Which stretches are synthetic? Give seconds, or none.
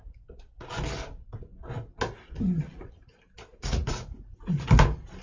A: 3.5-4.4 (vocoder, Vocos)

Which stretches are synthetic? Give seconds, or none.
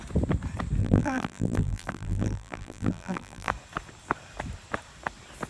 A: 0.8-3.5 (vocoder, BigVGAN v2)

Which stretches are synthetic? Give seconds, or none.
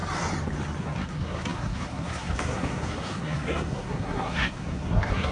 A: 0.8-5.3 (codec, SNAC)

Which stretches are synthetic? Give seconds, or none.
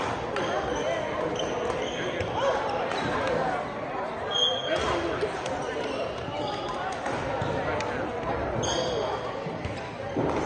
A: none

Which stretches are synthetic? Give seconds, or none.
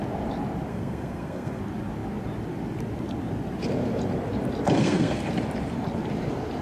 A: 0.7-1.6 (codec, SNAC); 4.8-5.3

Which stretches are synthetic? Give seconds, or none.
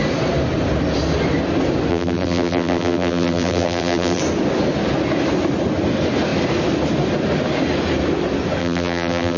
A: 1.9-4.2 (vocoder, BigVGAN v2); 8.6-9.4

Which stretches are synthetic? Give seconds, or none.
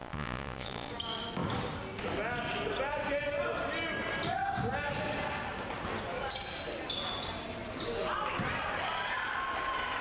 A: 0.0-0.9 (vocoder, Vocos)